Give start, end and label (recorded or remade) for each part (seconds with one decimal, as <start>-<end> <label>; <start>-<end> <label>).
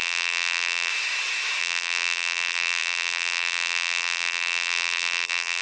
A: 0.0-0.9 remade; 0.9-1.6 recorded; 1.6-5.6 remade